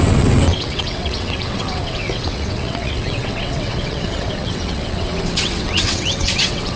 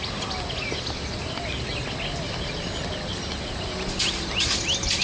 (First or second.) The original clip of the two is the second